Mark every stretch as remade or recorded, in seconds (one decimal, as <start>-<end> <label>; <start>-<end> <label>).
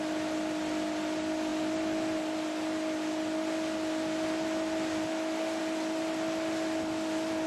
0.0-7.5 recorded